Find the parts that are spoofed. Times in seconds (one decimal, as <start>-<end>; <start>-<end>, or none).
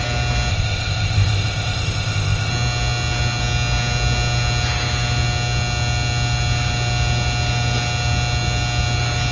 0.5-2.5